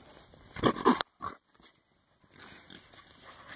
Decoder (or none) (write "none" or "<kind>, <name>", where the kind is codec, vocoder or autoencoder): none